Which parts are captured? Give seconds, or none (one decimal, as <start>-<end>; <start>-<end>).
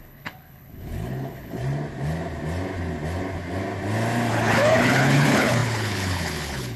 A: 1.6-4.3